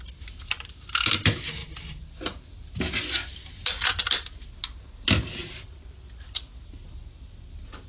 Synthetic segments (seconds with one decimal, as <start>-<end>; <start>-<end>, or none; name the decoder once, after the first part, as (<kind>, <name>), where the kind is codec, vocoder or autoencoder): 1.6-2.2 (vocoder, BigVGAN v2); 5.2-6.7